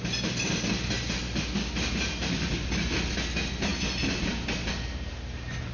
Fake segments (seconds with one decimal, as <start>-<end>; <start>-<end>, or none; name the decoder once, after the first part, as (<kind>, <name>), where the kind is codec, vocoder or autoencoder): none